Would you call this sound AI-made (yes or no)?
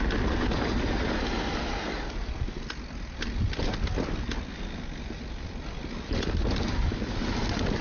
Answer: no